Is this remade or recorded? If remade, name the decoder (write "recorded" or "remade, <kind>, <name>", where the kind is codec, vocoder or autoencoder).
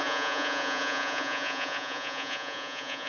remade, vocoder, Vocos